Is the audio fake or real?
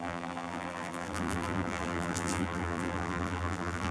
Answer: fake